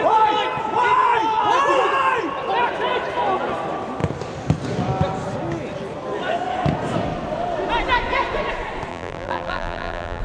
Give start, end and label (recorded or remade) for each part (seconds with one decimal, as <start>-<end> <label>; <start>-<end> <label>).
0.0-8.9 recorded; 8.9-10.2 remade